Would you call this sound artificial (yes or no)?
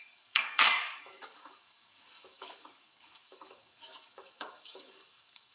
yes